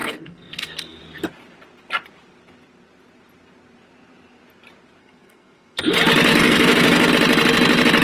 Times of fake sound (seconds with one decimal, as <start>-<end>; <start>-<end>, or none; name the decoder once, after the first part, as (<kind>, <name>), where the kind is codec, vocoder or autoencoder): 0.0-1.0 (codec, SNAC); 5.0-5.8; 6.3-7.1